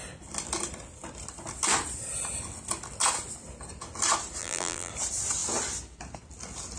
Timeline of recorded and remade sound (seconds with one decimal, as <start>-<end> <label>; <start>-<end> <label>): 0.0-4.4 recorded; 4.4-4.9 remade; 4.9-6.8 recorded